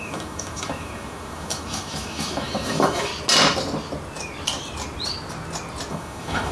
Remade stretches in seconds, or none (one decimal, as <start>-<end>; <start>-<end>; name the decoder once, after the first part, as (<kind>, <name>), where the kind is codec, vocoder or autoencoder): 0.0-3.1 (autoencoder, DAC-VAE); 5.9-6.5